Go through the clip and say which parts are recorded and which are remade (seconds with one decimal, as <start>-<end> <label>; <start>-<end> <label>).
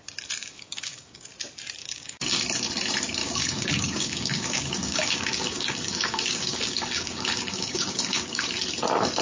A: 0.0-0.4 recorded; 0.4-1.3 remade; 1.3-1.8 recorded; 1.8-2.4 remade; 2.4-3.2 recorded; 3.2-8.4 remade; 8.4-9.2 recorded